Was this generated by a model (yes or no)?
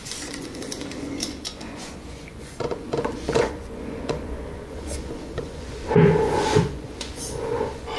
yes